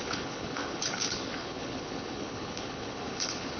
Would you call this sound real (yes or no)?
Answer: no